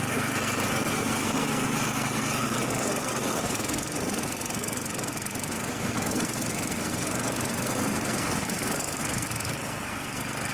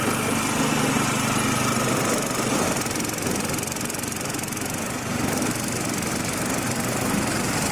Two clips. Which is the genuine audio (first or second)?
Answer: second